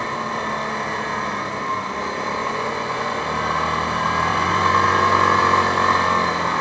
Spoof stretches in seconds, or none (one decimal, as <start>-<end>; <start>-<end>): 2.4-3.2; 4.3-5.4